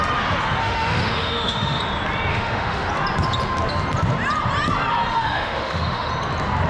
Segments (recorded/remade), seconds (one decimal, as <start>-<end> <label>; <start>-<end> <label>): 0.0-0.6 recorded; 0.6-1.8 remade; 1.8-2.3 recorded; 2.3-2.9 remade; 2.9-5.1 recorded; 5.1-6.1 remade; 6.1-6.7 recorded